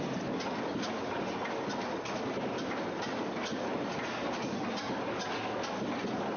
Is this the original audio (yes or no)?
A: yes